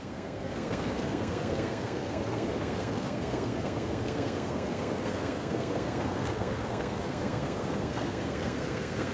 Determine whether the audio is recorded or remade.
remade